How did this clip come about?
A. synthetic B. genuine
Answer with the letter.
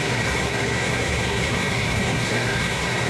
A